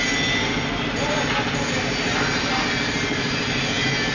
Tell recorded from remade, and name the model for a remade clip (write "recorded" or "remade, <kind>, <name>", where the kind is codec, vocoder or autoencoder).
recorded